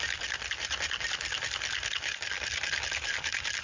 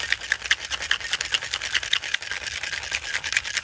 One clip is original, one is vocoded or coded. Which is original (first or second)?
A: second